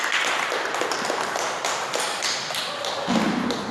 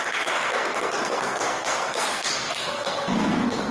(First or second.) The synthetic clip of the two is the second